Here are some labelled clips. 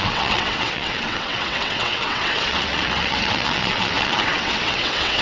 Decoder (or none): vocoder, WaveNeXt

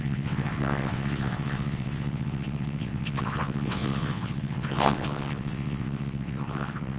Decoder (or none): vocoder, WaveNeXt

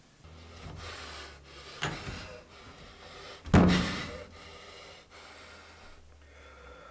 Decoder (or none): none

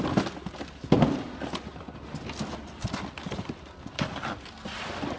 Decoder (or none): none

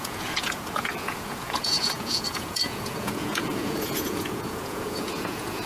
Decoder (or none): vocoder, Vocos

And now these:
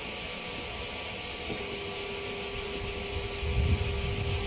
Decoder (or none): none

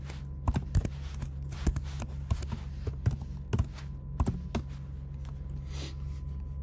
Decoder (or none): none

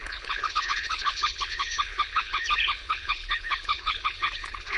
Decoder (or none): codec, HILCodec